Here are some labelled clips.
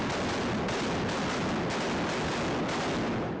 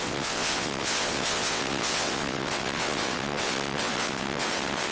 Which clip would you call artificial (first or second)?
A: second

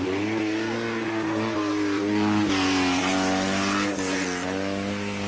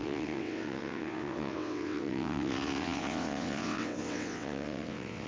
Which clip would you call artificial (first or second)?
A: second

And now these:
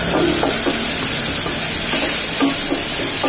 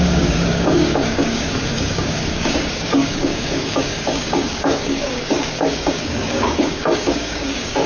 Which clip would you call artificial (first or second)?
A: second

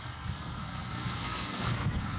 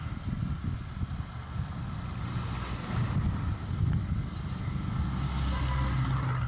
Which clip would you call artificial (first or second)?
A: first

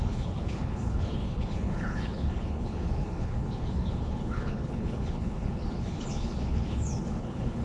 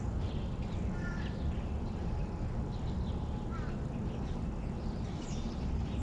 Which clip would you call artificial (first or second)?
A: first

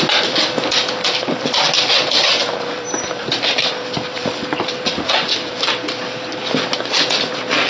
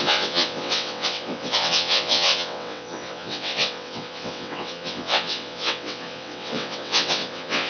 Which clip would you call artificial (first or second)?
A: second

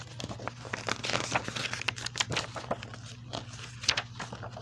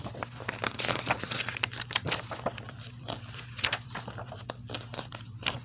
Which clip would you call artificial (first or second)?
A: second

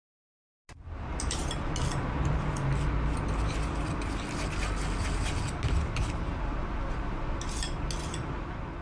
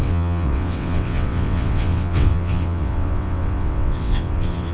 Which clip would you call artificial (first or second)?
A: second